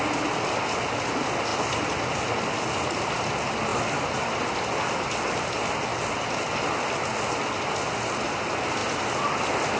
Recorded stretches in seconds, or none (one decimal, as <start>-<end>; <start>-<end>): 0.0-9.8